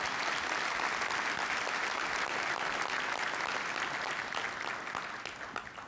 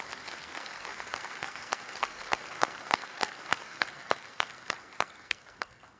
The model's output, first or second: second